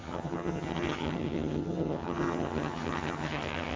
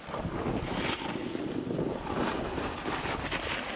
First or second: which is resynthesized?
first